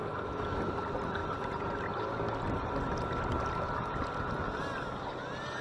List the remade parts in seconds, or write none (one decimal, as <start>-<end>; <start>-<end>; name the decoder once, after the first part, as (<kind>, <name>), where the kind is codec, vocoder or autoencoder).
none